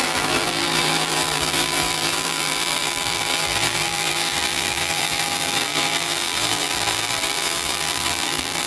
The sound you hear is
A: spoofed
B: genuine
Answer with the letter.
A